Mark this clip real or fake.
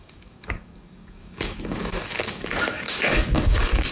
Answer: fake